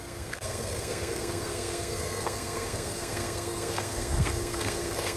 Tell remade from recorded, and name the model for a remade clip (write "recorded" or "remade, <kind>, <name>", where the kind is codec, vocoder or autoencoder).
remade, codec, SNAC